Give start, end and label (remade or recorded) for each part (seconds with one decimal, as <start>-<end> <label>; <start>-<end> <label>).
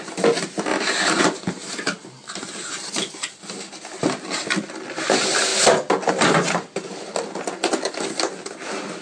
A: 0.0-9.0 recorded